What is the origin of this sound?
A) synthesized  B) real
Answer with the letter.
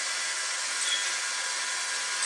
B